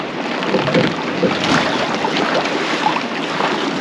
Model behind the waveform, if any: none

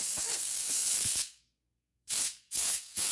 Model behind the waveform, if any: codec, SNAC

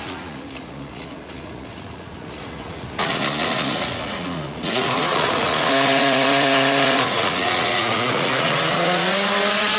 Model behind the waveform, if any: vocoder, Vocos